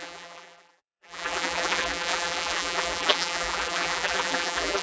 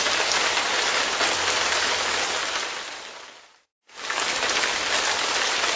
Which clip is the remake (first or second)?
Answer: first